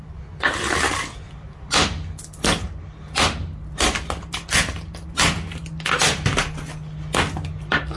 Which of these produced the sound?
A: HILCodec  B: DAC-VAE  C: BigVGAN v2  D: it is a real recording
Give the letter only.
D